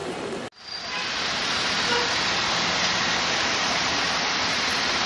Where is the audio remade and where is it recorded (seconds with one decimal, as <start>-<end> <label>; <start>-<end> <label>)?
0.0-3.6 recorded; 3.6-5.1 remade